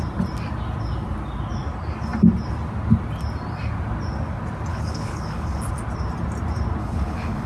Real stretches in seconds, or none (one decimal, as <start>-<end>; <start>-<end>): 0.0-4.7; 5.7-6.8